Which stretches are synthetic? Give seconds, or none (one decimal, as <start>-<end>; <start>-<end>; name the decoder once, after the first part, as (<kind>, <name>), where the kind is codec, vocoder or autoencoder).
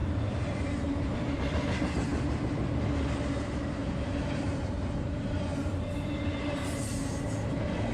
0.0-0.8 (vocoder, BigVGAN v2); 3.8-6.5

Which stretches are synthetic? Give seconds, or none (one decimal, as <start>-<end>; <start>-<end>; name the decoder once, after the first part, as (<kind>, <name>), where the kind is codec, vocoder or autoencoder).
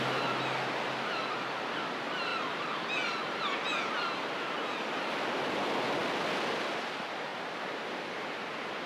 none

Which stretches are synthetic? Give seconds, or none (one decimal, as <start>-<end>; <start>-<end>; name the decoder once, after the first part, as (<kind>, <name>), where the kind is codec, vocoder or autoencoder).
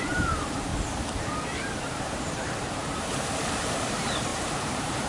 0.0-0.7 (vocoder, BigVGAN v2); 1.8-5.1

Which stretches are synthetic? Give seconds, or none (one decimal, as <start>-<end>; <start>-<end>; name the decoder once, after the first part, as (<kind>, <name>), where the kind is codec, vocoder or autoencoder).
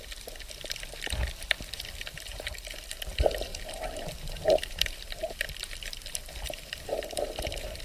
2.3-3.1 (vocoder, BigVGAN v2); 3.5-7.8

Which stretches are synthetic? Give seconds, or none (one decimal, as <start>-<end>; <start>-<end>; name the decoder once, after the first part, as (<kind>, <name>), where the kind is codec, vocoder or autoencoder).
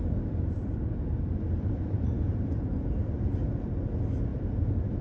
4.3-5.0 (vocoder, BigVGAN v2)